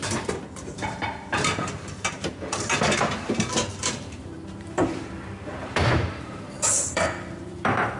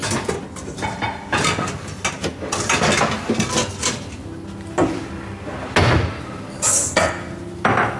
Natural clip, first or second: second